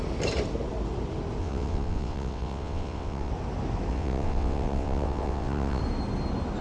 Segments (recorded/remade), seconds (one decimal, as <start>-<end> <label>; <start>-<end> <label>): 0.0-1.4 recorded; 1.4-3.3 remade; 3.3-3.9 recorded; 3.9-5.8 remade; 5.8-6.6 recorded